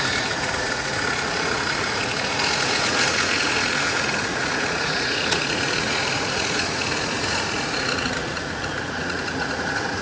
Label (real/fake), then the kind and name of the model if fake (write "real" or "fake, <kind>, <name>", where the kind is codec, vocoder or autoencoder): fake, vocoder, Vocos